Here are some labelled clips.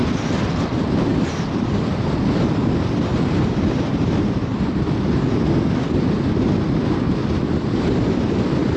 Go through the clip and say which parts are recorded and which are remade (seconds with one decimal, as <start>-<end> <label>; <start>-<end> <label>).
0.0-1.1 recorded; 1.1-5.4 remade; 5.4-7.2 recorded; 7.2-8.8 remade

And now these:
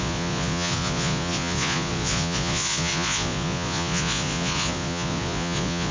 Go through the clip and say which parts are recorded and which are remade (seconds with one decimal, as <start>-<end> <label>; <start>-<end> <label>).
0.0-5.9 remade

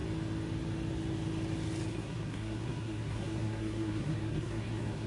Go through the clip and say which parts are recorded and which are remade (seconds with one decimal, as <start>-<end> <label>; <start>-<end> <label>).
0.0-1.9 recorded; 1.9-5.1 remade